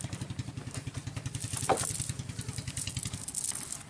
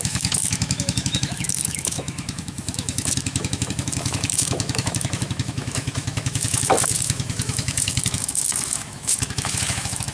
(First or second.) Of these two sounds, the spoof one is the second